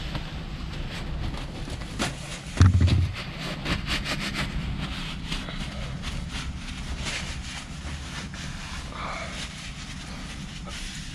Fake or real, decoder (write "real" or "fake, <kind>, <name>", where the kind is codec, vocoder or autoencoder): real